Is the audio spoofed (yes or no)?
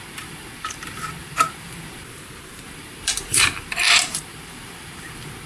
yes